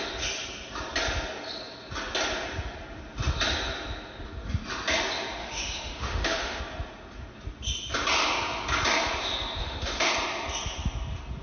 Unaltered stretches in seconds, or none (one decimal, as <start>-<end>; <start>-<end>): 0.0-5.4; 6.6-9.6; 10.1-11.4